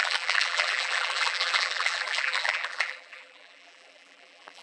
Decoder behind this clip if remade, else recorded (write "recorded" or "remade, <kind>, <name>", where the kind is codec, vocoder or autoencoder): remade, vocoder, BigVGAN v2